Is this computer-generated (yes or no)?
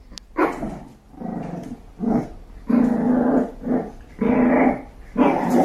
no